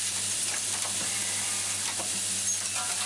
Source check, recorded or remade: remade